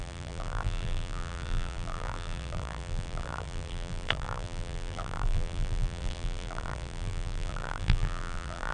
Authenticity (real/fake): fake